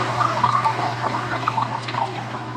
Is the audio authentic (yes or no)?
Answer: no